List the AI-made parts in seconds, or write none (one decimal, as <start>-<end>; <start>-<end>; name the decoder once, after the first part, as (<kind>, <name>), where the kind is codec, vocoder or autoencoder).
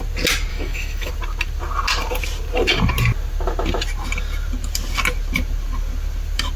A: 0.5-1.1 (autoencoder, DAC-VAE)